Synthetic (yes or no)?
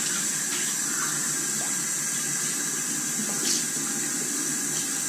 no